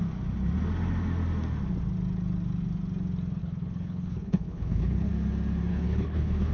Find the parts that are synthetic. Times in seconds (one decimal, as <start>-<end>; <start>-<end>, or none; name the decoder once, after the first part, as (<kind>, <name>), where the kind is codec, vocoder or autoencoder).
3.4-5.1 (codec, HILCodec); 5.7-6.5